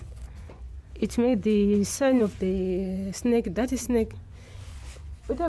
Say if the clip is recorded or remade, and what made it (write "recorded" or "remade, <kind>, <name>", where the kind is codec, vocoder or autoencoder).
remade, vocoder, Vocos